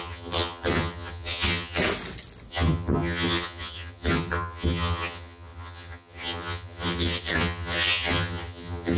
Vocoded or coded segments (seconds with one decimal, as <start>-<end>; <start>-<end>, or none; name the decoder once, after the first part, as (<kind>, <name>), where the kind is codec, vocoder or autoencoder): 0.0-1.8 (vocoder, HiFi-GAN); 2.5-9.0

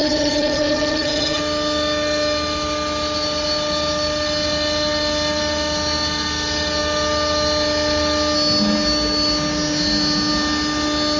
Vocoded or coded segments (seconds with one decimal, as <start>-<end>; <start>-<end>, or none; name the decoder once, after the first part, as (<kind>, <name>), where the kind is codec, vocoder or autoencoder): 0.0-1.4 (vocoder, HiFi-GAN)

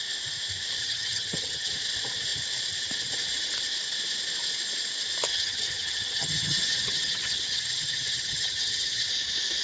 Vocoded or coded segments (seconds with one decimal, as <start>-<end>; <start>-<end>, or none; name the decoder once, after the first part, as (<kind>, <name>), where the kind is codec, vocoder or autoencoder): 0.8-1.7 (vocoder, HiFi-GAN); 5.3-9.1

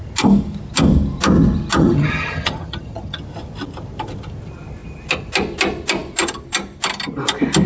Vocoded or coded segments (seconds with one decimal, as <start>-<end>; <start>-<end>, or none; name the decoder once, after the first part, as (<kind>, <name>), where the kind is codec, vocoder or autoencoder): 1.8-3.2 (vocoder, HiFi-GAN)

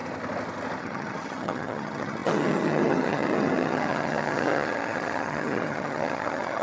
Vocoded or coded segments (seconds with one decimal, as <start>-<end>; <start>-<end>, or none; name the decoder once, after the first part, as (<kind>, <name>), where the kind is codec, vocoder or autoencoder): 0.8-6.6 (vocoder, HiFi-GAN)

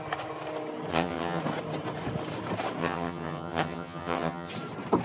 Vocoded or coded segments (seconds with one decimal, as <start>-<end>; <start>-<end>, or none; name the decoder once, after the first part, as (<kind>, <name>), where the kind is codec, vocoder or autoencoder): 0.9-1.4 (vocoder, HiFi-GAN); 2.8-4.5

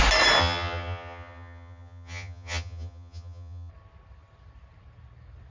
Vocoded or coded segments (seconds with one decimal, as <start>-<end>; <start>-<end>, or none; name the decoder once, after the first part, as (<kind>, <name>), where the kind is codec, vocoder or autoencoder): 0.4-3.7 (vocoder, HiFi-GAN)

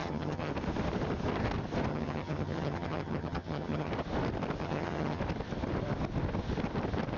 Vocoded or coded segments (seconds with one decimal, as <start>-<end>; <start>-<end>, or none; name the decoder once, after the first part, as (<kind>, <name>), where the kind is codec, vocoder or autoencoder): 0.0-0.5 (vocoder, HiFi-GAN); 1.9-3.9; 4.6-5.2